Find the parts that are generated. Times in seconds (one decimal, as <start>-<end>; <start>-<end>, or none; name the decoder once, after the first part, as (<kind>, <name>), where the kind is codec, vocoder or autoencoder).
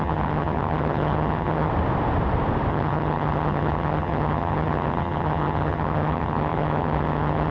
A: 0.0-1.7 (vocoder, HiFi-GAN); 2.7-7.5